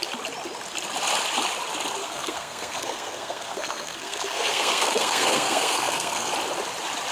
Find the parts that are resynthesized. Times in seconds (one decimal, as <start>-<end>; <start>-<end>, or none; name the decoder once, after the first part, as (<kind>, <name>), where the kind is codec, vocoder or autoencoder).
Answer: 2.0-6.3 (codec, SNAC)